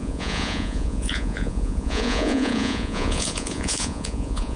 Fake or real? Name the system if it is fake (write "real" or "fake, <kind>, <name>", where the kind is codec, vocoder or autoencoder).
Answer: fake, vocoder, Vocos